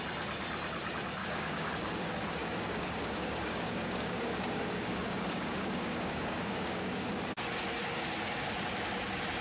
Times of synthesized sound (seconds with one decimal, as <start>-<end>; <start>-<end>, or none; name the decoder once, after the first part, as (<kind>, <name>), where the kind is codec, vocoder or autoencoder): 1.2-1.7 (codec, DAC); 2.4-7.1